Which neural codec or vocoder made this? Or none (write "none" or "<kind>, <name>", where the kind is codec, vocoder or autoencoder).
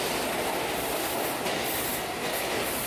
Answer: none